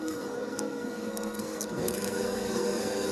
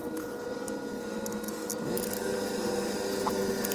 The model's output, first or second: first